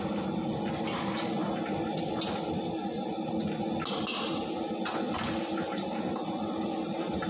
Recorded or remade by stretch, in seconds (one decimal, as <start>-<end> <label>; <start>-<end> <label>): 0.0-7.3 recorded